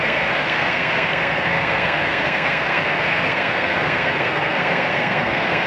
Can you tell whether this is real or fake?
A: fake